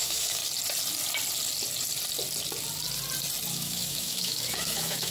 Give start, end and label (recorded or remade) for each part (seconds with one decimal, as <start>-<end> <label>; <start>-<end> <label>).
0.0-0.4 remade; 0.4-3.5 recorded; 3.5-5.1 remade